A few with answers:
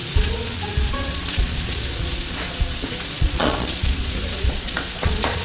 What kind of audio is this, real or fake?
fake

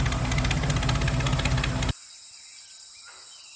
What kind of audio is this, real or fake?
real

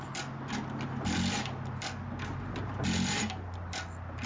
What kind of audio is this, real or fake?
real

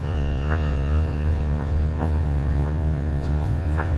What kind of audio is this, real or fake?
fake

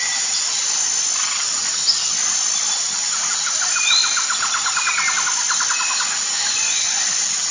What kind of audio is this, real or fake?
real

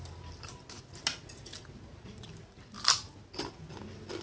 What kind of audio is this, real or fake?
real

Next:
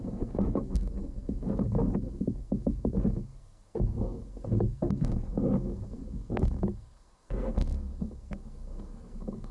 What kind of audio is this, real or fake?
fake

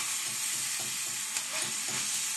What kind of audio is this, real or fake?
real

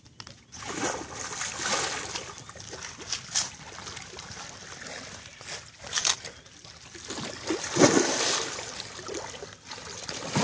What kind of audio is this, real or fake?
real